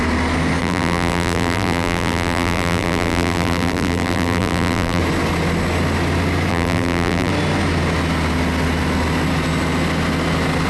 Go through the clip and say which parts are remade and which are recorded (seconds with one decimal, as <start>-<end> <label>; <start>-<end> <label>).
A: 0.0-0.6 recorded; 0.6-5.0 remade; 5.0-6.5 recorded; 6.5-7.3 remade; 7.3-10.7 recorded